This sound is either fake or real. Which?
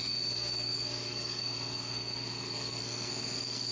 fake